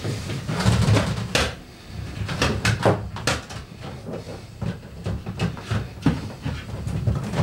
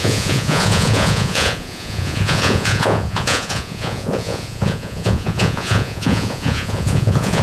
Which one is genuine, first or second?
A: first